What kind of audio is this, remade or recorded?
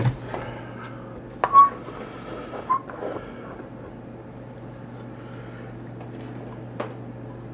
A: recorded